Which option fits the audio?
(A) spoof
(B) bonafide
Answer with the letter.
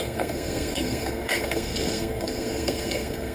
A